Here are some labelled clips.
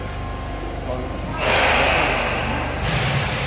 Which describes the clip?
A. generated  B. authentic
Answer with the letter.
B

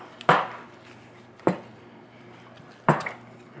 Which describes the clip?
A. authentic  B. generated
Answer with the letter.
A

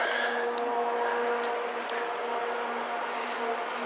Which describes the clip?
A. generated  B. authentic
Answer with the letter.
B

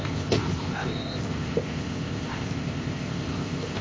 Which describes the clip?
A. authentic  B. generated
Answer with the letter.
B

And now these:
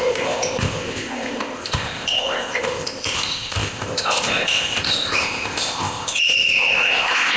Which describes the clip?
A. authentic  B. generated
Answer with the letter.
B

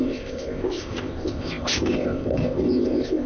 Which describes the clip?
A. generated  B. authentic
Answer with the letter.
A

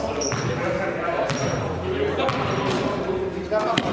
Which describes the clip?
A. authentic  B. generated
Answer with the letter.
A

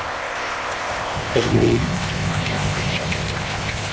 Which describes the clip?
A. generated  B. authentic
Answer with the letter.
A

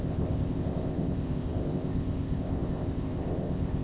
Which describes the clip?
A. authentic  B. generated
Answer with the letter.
B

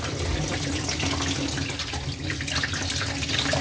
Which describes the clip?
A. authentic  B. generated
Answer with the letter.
A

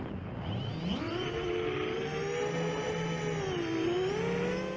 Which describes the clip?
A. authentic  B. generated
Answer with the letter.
A